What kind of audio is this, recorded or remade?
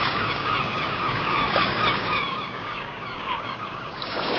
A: remade